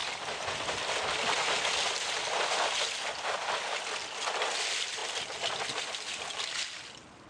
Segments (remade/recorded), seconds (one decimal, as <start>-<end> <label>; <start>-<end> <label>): 0.0-3.8 remade; 3.8-7.3 recorded